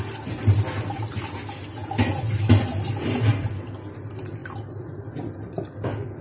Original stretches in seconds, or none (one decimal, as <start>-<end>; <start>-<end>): 0.0-6.2